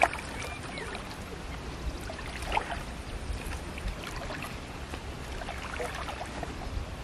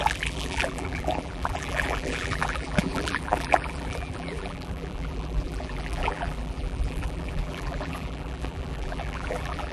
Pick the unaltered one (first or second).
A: first